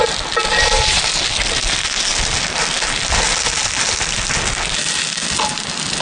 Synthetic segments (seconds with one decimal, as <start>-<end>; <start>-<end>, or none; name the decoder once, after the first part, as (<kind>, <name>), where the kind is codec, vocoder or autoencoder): 0.5-1.0 (vocoder, BigVGAN v2)